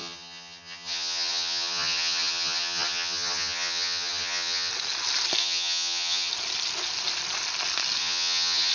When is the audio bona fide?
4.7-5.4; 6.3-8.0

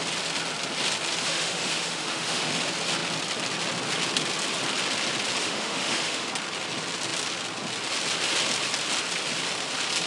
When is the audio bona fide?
0.0-1.2; 2.5-5.4; 6.3-10.1